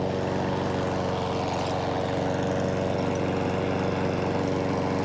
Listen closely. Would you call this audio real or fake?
real